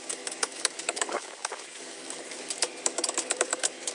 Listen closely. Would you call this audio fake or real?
fake